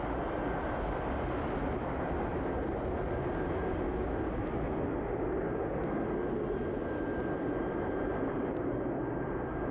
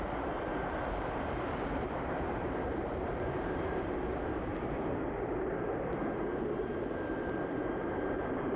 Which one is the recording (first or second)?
first